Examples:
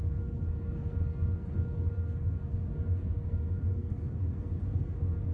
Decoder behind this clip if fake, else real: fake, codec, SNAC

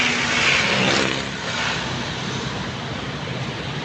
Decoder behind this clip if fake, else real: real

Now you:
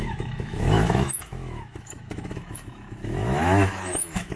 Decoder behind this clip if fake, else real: fake, autoencoder, DAC-VAE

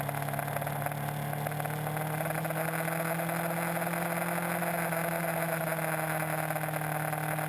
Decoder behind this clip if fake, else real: real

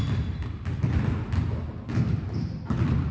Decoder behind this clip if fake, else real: real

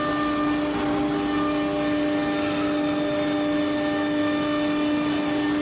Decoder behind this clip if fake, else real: real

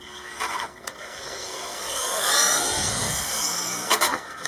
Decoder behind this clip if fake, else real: fake, codec, SNAC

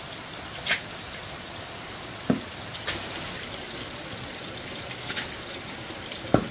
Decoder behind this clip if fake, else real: real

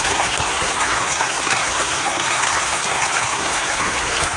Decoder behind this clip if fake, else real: fake, codec, SNAC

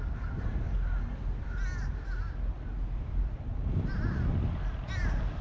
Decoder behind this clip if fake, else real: real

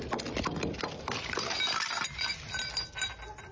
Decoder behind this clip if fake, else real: real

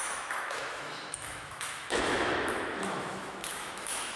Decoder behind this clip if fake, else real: fake, autoencoder, DAC-VAE